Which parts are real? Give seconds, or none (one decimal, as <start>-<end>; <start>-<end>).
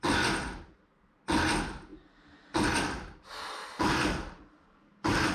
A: 0.0-5.3